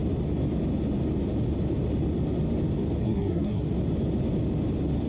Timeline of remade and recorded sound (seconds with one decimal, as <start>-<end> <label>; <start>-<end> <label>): 0.0-3.0 recorded; 3.0-3.7 remade; 3.7-5.1 recorded

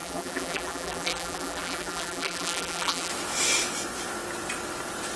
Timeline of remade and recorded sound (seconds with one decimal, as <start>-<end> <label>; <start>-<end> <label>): 0.0-3.1 remade; 3.1-5.2 recorded

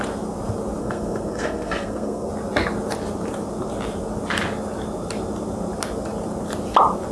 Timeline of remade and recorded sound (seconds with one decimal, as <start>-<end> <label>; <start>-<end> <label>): 0.0-0.8 recorded; 0.8-2.3 remade; 2.3-7.1 recorded

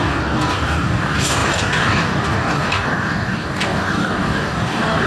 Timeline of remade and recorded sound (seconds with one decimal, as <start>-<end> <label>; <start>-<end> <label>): 0.0-5.1 remade

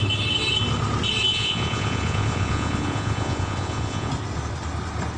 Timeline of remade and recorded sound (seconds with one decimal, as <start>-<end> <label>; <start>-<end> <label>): 0.0-1.3 recorded; 1.3-4.1 remade; 4.1-5.2 recorded

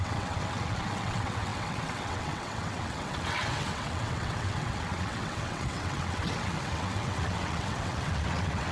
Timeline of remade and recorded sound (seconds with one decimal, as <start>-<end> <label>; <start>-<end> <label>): 0.0-8.7 remade

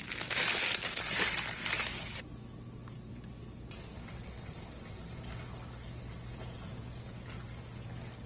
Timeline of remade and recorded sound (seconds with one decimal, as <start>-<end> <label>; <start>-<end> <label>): 0.0-6.3 recorded; 6.3-7.1 remade; 7.1-8.3 recorded

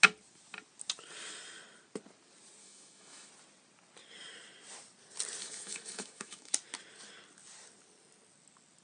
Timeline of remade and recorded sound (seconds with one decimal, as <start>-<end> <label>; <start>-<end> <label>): 0.0-2.6 recorded; 2.6-3.3 remade; 3.3-5.4 recorded; 5.4-6.5 remade; 6.5-8.8 recorded